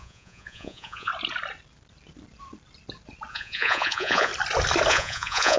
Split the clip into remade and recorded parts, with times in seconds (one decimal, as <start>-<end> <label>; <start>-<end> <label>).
0.0-1.1 remade; 1.1-3.3 recorded; 3.3-4.3 remade; 4.3-4.9 recorded; 4.9-5.6 remade

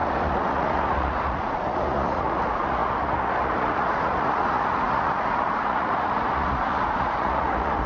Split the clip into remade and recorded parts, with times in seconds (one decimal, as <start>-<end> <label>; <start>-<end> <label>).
0.0-7.9 remade

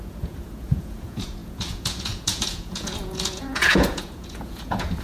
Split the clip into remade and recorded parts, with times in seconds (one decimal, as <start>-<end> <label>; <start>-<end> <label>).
0.0-5.0 remade

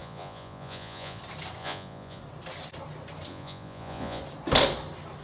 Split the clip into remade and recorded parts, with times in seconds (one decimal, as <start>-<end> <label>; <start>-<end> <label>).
0.0-1.2 remade; 1.2-1.6 recorded; 1.6-2.2 remade; 2.2-3.3 recorded; 3.3-4.2 remade; 4.2-5.2 recorded

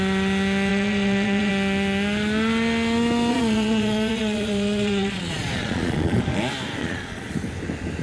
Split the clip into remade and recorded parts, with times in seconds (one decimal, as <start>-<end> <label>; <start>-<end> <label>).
0.0-0.7 recorded; 0.7-1.5 remade; 1.5-3.3 recorded; 3.3-6.2 remade; 6.2-6.8 recorded; 6.8-7.3 remade; 7.3-8.0 recorded